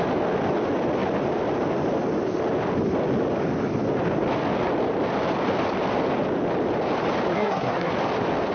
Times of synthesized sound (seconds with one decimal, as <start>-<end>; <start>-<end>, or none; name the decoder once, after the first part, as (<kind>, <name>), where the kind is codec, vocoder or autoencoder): 7.3-7.9 (codec, SNAC)